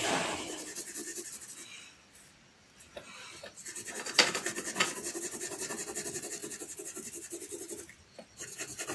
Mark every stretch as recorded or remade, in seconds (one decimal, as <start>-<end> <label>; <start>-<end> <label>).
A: 0.0-8.9 recorded